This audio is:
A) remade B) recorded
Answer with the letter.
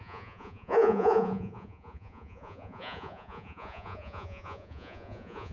A